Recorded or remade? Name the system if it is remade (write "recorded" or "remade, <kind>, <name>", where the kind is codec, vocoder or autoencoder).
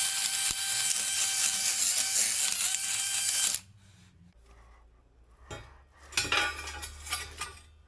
recorded